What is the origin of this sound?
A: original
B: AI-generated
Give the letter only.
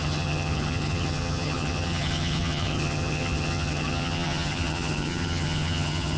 B